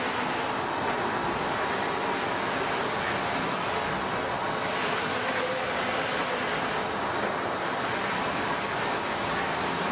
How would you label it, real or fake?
real